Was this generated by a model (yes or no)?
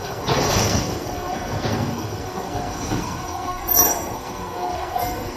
yes